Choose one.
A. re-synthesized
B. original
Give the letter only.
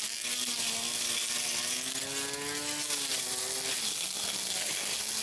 B